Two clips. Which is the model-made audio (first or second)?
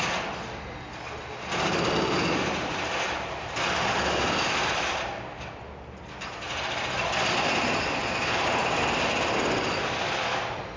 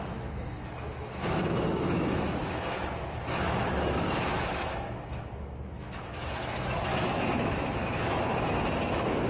second